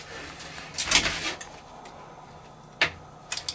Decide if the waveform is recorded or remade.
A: recorded